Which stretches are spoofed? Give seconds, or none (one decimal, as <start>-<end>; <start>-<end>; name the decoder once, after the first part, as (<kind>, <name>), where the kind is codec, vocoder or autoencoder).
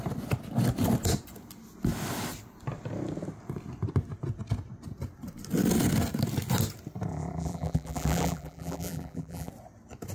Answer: 7.1-9.5 (vocoder, BigVGAN v2)